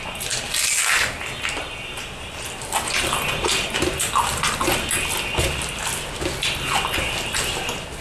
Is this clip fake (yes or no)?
no